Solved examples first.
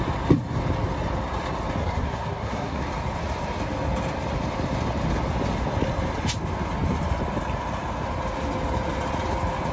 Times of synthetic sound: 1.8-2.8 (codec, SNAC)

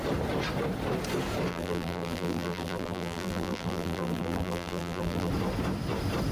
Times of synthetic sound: 1.5-5.3 (vocoder, BigVGAN v2)

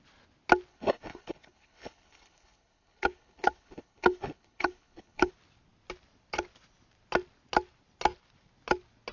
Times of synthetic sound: 0.7-5.3 (codec, HILCodec)